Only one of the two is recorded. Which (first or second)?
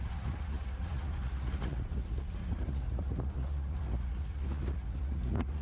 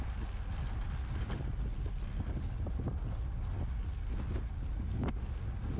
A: second